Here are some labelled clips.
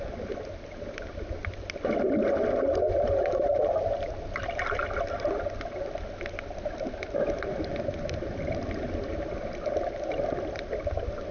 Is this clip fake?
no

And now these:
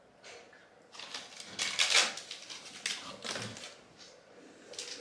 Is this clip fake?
no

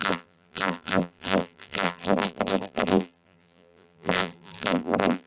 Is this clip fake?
yes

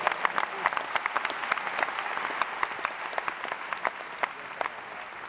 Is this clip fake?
no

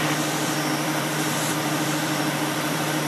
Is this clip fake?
yes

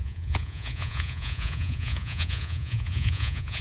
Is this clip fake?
yes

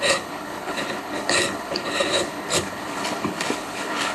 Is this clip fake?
yes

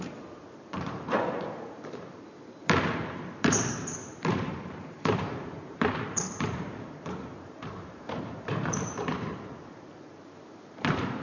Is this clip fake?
yes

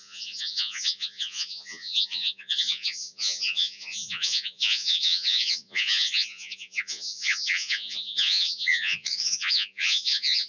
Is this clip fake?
yes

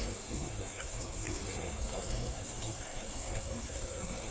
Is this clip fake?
yes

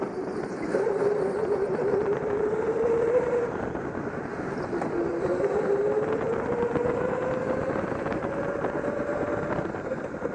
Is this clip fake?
no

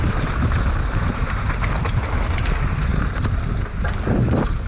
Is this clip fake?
no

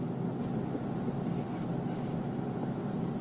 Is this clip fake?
no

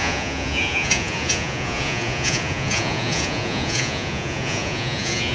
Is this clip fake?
yes